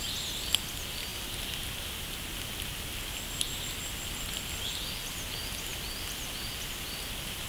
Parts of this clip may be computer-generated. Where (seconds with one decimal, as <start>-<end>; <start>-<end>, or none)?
none